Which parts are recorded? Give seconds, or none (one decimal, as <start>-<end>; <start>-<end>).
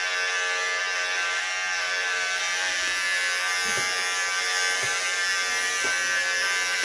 0.0-6.8